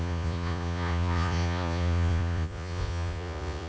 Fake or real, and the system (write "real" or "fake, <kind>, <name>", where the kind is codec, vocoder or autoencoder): fake, vocoder, Vocos